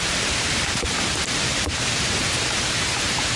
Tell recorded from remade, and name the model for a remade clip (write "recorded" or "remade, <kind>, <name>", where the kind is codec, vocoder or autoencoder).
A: remade, vocoder, BigVGAN v2